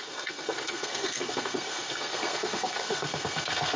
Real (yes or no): no